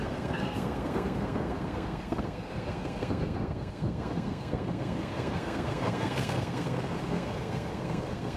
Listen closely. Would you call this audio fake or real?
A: fake